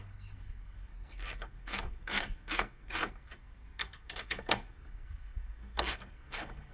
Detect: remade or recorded remade